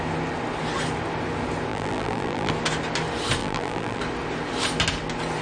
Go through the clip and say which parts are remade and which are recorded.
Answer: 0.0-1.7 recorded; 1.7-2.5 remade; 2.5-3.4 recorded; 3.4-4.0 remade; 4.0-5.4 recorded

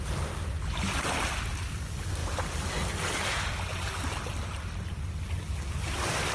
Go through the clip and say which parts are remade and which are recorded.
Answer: 0.0-0.4 recorded; 0.4-1.5 remade; 1.5-6.3 recorded

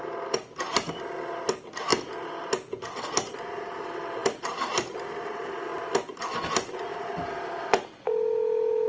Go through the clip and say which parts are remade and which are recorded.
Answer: 0.0-4.2 recorded; 4.2-5.1 remade; 5.1-6.9 recorded; 6.9-7.4 remade; 7.4-8.9 recorded